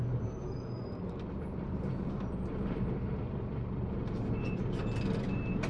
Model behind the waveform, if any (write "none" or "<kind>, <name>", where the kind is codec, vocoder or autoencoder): vocoder, BigVGAN v2